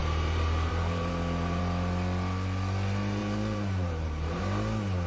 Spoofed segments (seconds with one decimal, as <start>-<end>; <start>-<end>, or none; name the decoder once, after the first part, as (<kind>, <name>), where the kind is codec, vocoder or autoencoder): 0.0-1.6 (vocoder, BigVGAN v2); 3.2-4.4